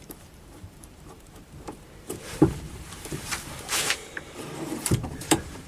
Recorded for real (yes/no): no